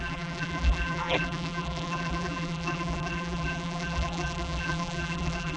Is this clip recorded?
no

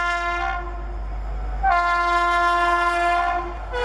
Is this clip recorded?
yes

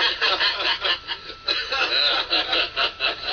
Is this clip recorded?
yes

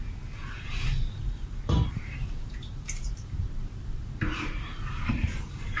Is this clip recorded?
no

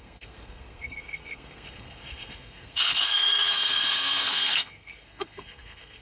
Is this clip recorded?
no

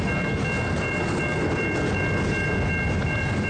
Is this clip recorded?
yes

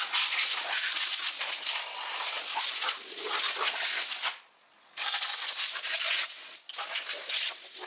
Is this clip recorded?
yes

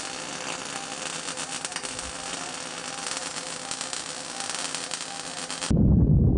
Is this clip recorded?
yes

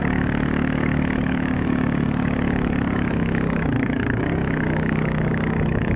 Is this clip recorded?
no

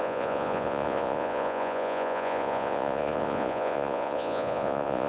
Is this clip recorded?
no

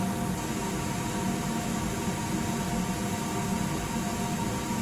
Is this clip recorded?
yes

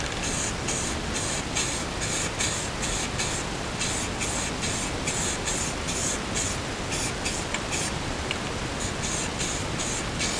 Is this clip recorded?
yes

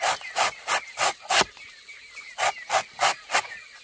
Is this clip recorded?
yes